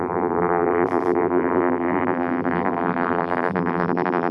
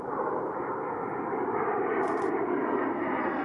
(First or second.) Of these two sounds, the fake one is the first